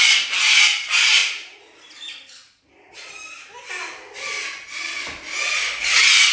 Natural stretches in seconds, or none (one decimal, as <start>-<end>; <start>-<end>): 0.0-6.3